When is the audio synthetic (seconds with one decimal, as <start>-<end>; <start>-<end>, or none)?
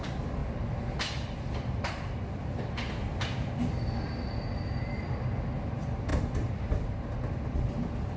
6.1-7.1